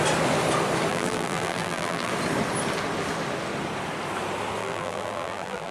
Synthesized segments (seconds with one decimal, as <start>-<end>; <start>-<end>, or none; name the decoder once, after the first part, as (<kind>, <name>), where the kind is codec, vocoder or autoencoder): 0.9-2.1 (vocoder, BigVGAN v2); 4.6-5.7